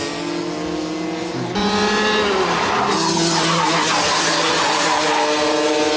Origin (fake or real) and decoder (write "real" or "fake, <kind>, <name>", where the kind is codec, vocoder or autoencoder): real